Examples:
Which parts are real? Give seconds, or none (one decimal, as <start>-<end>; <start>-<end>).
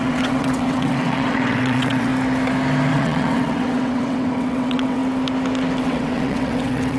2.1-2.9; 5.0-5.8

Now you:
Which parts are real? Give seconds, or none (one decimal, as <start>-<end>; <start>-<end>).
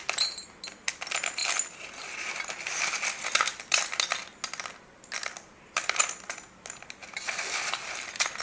0.0-8.4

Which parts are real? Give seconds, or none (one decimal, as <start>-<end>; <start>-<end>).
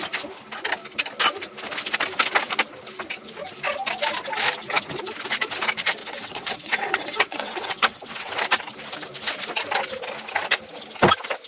0.0-6.0; 8.3-11.5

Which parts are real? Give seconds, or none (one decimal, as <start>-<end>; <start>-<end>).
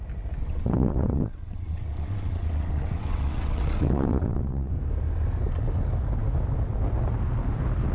0.0-0.4; 4.7-7.9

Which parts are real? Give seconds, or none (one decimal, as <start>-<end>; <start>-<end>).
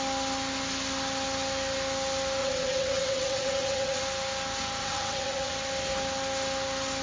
0.0-2.4; 4.0-4.8; 5.5-7.0